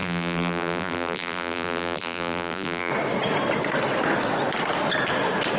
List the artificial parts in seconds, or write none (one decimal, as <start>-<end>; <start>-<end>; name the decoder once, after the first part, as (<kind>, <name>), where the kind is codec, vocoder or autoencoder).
0.0-2.9 (vocoder, BigVGAN v2)